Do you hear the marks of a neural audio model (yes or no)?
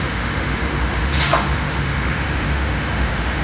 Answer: yes